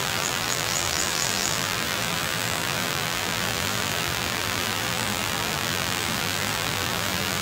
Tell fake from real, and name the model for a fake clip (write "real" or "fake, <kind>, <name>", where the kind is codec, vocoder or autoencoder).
fake, vocoder, BigVGAN v2